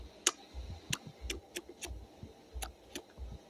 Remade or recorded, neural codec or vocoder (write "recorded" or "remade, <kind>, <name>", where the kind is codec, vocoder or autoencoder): recorded